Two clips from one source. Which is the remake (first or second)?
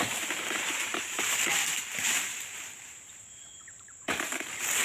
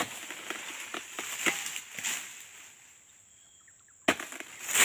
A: first